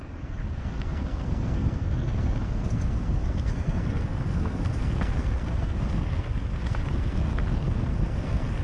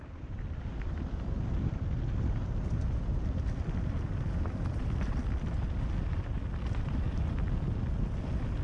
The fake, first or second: first